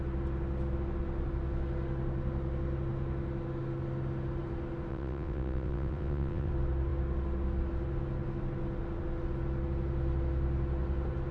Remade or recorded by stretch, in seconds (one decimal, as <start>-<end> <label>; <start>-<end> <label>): 0.0-4.9 recorded; 4.9-6.5 remade; 6.5-11.3 recorded